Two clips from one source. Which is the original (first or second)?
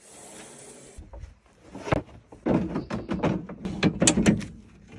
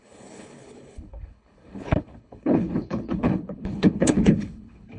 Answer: first